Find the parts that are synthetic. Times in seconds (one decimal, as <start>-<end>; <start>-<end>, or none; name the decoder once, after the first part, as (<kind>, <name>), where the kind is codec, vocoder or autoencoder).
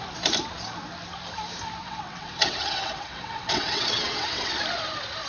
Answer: 1.8-4.5 (vocoder, WaveNeXt)